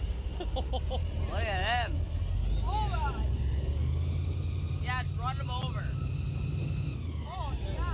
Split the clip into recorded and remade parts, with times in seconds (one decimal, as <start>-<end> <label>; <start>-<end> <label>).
0.0-7.9 recorded